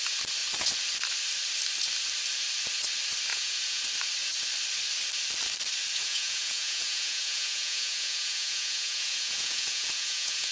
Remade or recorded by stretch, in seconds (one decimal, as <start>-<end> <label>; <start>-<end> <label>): 0.0-3.3 recorded; 3.3-3.8 remade; 3.8-6.0 recorded; 6.0-10.5 remade